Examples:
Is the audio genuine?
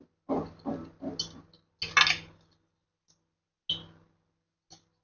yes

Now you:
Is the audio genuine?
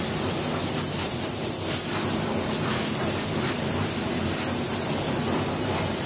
yes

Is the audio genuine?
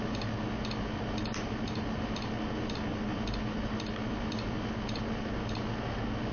yes